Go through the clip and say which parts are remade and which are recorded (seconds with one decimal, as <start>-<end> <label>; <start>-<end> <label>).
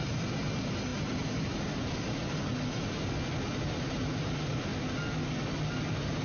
0.0-2.5 remade; 2.5-3.9 recorded; 3.9-4.7 remade; 4.7-5.7 recorded; 5.7-6.2 remade